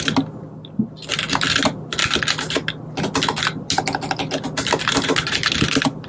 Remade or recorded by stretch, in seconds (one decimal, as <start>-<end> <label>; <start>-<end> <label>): 0.0-6.1 recorded